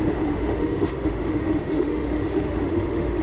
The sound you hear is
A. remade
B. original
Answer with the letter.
A